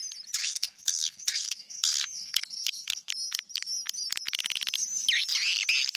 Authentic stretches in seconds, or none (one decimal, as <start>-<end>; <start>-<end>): 0.0-0.4; 3.1-6.0